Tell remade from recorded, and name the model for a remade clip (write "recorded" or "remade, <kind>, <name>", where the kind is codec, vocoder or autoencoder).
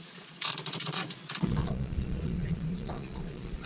remade, vocoder, Vocos